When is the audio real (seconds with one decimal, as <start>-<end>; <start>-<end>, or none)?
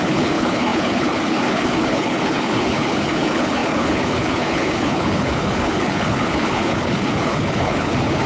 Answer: none